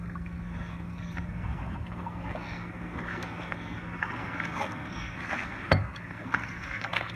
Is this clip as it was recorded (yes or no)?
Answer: no